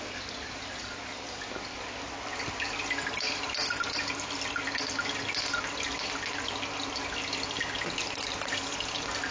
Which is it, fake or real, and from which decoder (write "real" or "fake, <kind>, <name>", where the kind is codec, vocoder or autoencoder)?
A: real